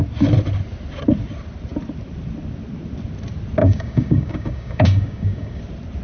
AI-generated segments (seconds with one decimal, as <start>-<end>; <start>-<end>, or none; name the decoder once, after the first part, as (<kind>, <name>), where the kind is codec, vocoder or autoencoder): 3.6-5.6 (codec, DAC)